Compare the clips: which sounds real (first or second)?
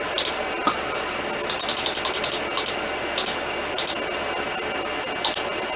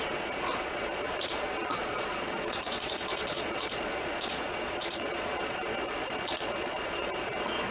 first